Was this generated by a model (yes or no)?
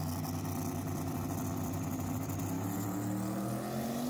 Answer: no